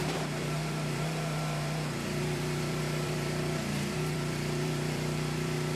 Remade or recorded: remade